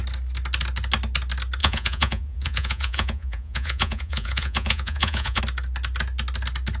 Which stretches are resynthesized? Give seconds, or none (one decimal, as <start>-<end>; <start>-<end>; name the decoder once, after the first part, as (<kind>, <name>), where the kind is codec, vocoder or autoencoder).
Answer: 1.6-5.4 (vocoder, Vocos)